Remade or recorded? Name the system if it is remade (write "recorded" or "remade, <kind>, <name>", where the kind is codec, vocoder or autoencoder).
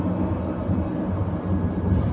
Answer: recorded